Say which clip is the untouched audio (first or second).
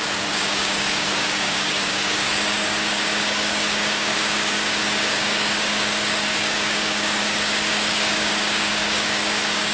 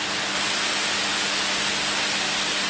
second